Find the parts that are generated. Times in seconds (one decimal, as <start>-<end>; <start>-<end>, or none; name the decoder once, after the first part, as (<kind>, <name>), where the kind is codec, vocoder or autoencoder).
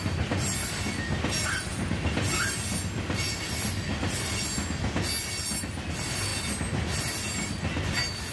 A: none